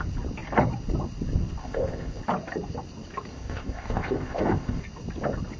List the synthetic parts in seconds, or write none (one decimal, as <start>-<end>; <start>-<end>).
1.6-2.2; 3.3-4.8